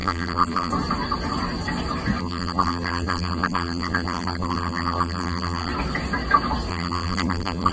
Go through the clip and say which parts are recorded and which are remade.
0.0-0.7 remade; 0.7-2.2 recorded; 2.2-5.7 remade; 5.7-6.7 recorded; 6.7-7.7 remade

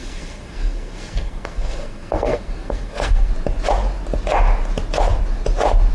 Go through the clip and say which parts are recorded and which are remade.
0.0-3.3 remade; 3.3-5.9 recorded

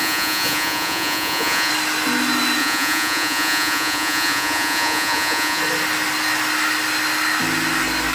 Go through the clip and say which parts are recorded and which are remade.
0.0-1.7 remade; 1.7-2.6 recorded; 2.6-5.6 remade; 5.6-8.1 recorded

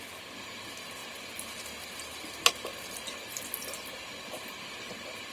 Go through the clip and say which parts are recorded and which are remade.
0.0-5.3 recorded

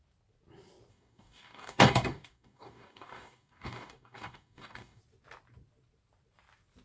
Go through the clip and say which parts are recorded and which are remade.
0.0-0.9 recorded; 0.9-5.0 remade; 5.0-6.8 recorded